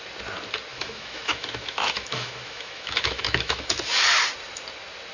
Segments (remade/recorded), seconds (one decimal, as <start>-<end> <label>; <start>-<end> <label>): 0.0-0.7 recorded; 0.7-3.8 remade; 3.8-5.1 recorded